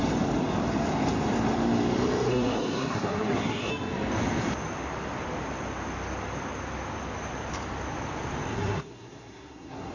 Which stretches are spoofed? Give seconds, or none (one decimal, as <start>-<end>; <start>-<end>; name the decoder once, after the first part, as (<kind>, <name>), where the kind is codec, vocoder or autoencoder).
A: 2.3-3.7 (codec, SNAC); 8.5-9.9